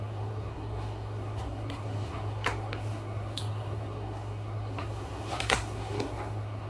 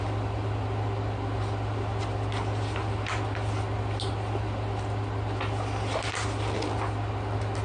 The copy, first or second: first